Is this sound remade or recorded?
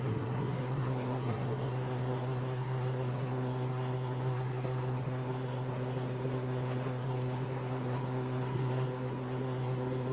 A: remade